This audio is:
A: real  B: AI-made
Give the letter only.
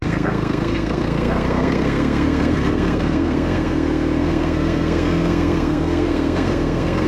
B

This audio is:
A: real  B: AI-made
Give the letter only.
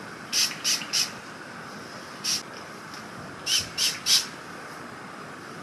A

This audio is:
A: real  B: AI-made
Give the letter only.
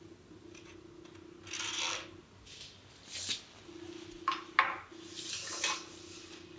A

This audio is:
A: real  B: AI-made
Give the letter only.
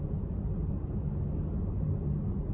A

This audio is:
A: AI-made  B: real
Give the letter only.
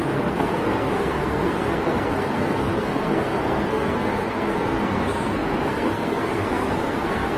A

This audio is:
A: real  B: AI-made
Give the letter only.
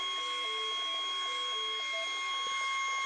A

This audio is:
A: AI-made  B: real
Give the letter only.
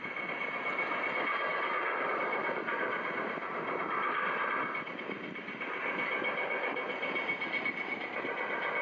B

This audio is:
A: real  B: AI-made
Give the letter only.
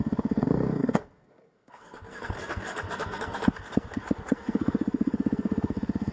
B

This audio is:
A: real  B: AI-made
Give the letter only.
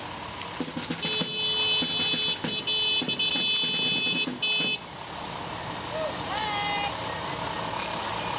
A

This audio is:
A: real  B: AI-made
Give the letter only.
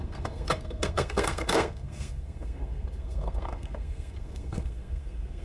B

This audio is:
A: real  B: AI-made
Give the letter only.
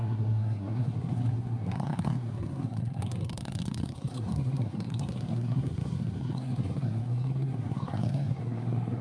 B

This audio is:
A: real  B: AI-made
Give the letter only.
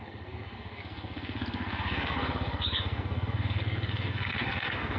B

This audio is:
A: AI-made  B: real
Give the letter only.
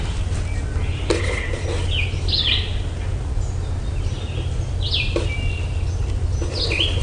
B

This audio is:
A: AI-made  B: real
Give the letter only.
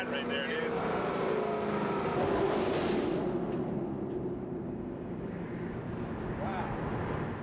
B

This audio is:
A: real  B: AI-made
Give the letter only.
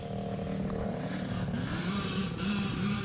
A